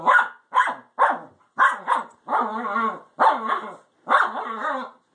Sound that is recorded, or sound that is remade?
recorded